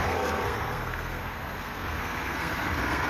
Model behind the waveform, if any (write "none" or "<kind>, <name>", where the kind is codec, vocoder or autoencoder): codec, SNAC